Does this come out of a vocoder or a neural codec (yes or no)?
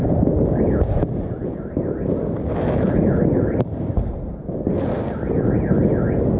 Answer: no